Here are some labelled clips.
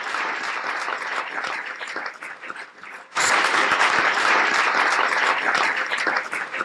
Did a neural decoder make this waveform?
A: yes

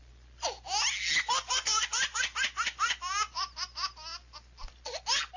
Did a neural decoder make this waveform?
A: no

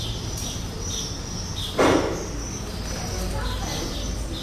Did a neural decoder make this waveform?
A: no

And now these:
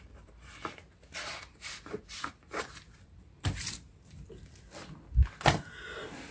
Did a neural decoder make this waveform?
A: no